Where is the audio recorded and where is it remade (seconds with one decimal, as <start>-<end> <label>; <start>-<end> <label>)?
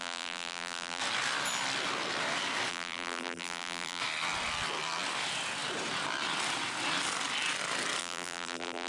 0.0-1.0 remade; 1.0-2.7 recorded; 2.7-4.0 remade; 4.0-8.0 recorded; 8.0-8.9 remade